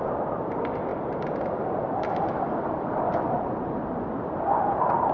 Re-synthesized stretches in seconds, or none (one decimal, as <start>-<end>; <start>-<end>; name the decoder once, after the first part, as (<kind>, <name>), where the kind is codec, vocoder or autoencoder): 0.9-3.3 (vocoder, BigVGAN v2)